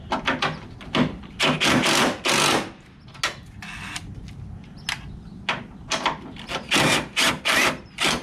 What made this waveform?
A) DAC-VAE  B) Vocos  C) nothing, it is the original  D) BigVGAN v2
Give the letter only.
C